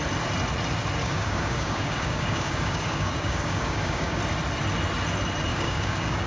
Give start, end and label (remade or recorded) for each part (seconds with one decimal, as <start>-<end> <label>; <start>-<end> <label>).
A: 0.0-1.0 recorded; 1.0-4.2 remade; 4.2-5.5 recorded; 5.5-6.3 remade